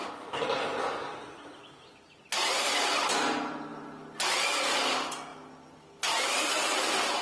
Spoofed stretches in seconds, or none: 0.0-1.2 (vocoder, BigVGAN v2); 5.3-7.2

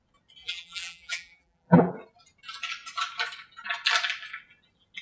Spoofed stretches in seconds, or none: 0.4-1.9 (vocoder, BigVGAN v2)